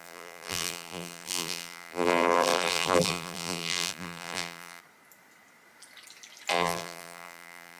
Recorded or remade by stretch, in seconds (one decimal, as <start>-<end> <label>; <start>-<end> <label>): 0.0-4.8 remade; 4.8-6.5 recorded; 6.5-7.8 remade

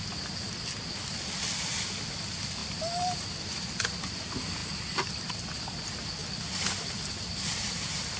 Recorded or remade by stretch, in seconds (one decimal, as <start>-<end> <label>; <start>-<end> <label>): 0.0-1.2 recorded; 1.2-4.6 remade; 4.6-5.3 recorded; 5.3-6.2 remade; 6.2-7.0 recorded; 7.0-8.2 remade

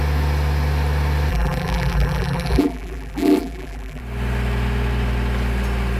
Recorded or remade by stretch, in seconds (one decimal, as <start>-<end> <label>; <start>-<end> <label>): 0.0-1.3 recorded; 1.3-4.0 remade; 4.0-6.0 recorded

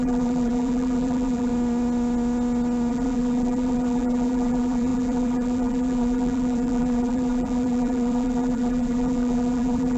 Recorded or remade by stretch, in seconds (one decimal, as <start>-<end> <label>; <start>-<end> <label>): 0.0-1.5 remade; 1.5-2.9 recorded; 2.9-10.0 remade

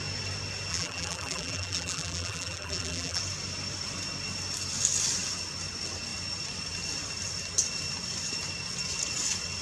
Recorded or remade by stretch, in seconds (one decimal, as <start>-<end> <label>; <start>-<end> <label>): 0.0-0.7 recorded; 0.7-3.2 remade; 3.2-9.6 recorded

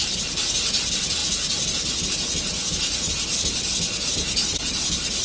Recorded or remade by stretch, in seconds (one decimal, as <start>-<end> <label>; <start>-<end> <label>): 0.0-5.2 recorded